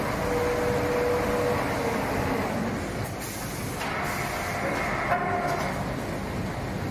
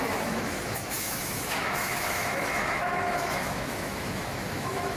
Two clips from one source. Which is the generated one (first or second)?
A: second